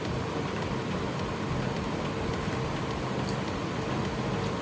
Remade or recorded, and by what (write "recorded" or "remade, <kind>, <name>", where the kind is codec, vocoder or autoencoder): recorded